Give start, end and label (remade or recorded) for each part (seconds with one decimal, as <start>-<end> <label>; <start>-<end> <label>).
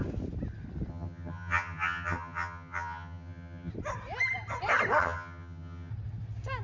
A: 0.0-0.9 recorded; 0.9-3.7 remade; 3.7-5.0 recorded; 5.0-5.9 remade; 5.9-6.6 recorded